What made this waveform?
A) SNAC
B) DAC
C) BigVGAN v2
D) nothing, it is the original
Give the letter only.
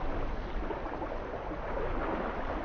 D